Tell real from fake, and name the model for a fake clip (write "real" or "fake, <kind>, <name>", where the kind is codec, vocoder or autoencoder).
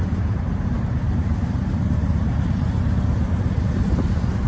fake, vocoder, BigVGAN v2